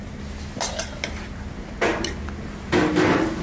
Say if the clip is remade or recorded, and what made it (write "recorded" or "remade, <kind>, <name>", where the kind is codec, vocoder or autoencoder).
recorded